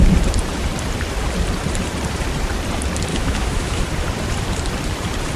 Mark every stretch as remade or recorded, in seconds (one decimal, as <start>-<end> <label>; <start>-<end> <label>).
0.0-3.1 recorded; 3.1-3.8 remade; 3.8-5.4 recorded